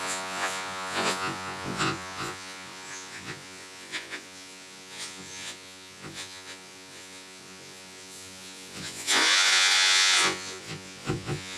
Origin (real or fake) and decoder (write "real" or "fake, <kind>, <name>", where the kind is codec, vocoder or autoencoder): fake, vocoder, Vocos